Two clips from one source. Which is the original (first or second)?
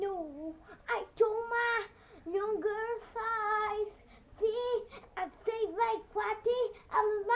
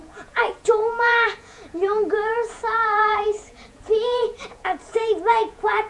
first